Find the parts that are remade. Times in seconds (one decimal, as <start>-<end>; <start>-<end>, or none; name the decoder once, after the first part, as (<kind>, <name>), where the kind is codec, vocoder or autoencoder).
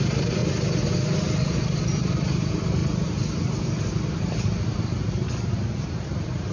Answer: 0.0-0.4 (vocoder, BigVGAN v2); 2.1-2.8; 4.2-6.5